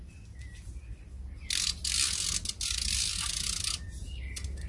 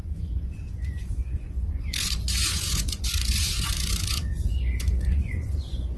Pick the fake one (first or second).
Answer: second